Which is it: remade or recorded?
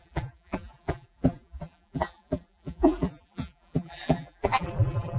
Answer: remade